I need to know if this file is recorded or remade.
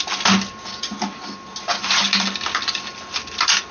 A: recorded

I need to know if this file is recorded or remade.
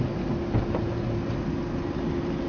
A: recorded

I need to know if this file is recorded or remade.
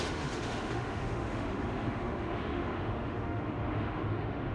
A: remade